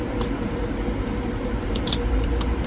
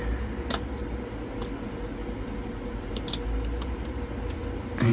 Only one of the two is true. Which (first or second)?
second